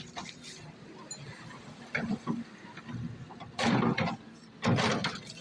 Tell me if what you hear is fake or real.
real